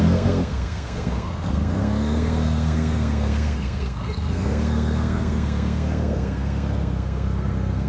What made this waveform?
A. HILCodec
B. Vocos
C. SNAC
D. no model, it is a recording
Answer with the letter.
C